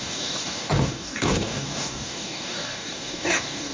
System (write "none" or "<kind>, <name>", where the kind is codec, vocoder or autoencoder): codec, DAC